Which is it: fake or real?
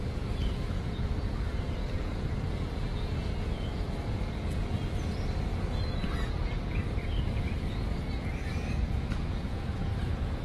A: fake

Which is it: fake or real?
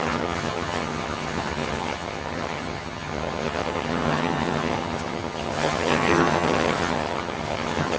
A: fake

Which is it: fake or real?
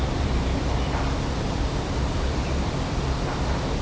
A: real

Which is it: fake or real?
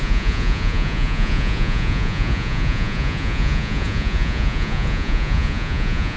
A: fake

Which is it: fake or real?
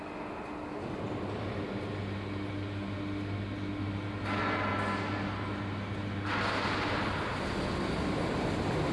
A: real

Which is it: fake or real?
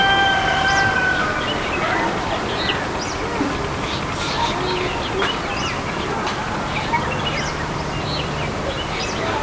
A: real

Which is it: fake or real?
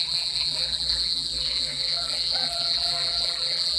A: fake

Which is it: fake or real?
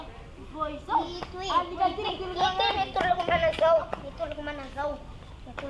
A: real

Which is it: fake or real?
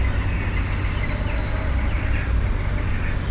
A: real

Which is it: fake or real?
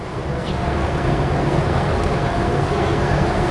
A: fake